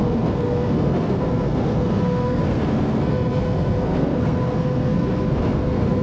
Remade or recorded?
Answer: remade